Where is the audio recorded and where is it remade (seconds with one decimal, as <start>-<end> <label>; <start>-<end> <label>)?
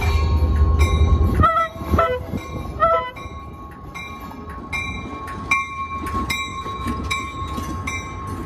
0.0-6.5 recorded; 6.5-7.6 remade; 7.6-8.5 recorded